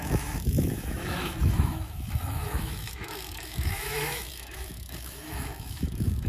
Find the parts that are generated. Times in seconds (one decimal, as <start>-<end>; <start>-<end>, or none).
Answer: 0.0-6.3